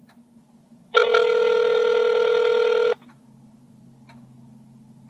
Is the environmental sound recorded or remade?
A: recorded